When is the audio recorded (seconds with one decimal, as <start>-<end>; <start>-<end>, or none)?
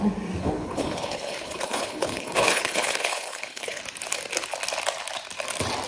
0.0-0.4; 3.8-5.9